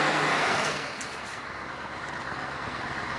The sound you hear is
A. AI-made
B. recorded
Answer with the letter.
A